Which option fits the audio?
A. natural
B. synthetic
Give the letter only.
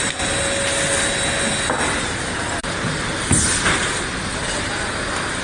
A